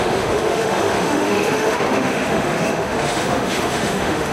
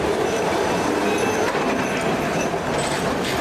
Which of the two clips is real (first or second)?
second